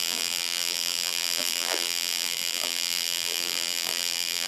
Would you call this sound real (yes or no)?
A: no